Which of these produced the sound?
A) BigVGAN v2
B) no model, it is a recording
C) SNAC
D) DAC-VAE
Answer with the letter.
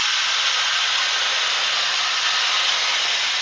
B